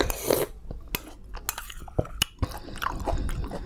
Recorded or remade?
recorded